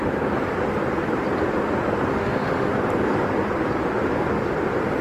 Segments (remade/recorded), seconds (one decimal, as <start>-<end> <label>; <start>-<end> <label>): 0.0-2.1 recorded; 2.1-2.7 remade; 2.7-5.0 recorded

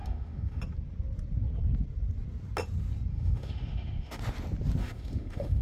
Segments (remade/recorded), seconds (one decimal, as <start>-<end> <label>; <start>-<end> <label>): 0.0-0.6 remade; 0.6-3.1 recorded; 3.1-4.2 remade; 4.2-4.8 recorded; 4.8-5.6 remade

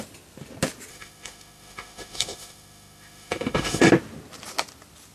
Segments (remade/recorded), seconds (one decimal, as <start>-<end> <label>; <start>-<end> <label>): 0.0-0.9 recorded; 0.9-3.9 remade; 3.9-5.1 recorded

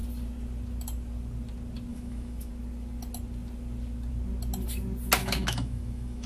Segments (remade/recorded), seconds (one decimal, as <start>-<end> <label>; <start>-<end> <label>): 0.0-1.9 recorded; 1.9-2.5 remade; 2.5-5.2 recorded; 5.2-6.3 remade

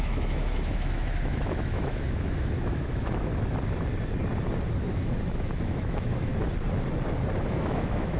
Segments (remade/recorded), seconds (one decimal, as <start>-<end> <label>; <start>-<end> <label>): 0.0-3.3 remade; 3.3-4.8 recorded; 4.8-6.3 remade; 6.3-7.4 recorded; 7.4-8.2 remade

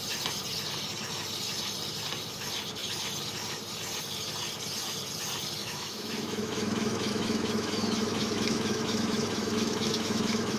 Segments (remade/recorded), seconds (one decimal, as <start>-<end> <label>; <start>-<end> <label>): 0.0-5.6 recorded; 5.6-10.6 remade

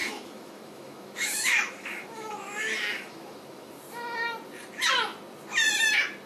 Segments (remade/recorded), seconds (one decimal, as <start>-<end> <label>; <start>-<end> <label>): 0.0-3.8 remade; 3.8-6.3 recorded

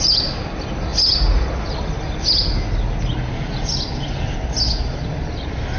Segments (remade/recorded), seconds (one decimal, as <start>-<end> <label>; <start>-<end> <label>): 0.0-5.8 recorded